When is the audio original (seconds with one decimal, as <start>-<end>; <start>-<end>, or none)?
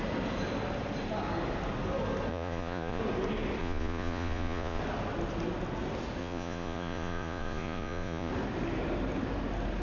0.0-2.3; 3.0-3.6; 4.8-6.2; 8.3-9.8